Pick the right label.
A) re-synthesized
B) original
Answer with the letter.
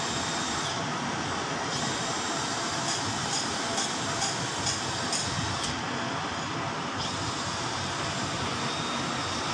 B